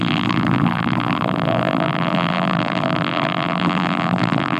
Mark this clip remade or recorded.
remade